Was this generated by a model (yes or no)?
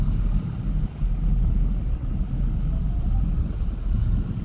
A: no